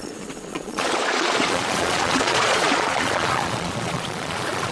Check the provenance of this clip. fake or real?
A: fake